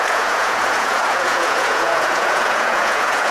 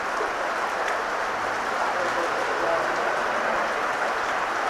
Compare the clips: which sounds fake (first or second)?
first